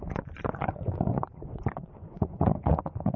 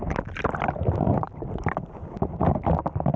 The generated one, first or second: first